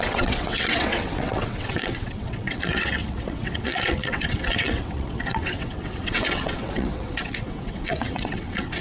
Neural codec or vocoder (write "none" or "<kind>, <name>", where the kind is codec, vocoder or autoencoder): vocoder, WaveNeXt